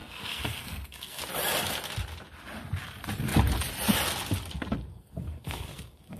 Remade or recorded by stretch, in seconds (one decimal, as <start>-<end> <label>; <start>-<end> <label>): 0.0-1.2 remade; 1.2-4.9 recorded; 4.9-6.2 remade